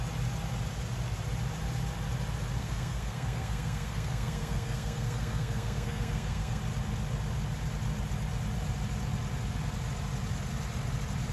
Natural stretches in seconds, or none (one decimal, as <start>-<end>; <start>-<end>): 0.0-2.6; 6.6-11.3